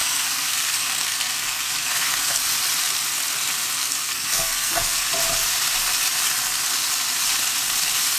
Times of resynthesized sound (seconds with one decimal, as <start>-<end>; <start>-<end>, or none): 0.0-2.4; 3.8-5.1